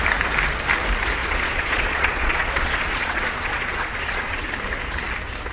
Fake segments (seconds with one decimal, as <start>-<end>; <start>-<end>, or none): 1.2-4.5